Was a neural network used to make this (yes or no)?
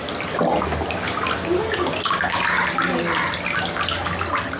no